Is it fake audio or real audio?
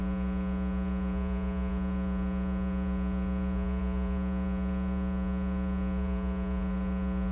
fake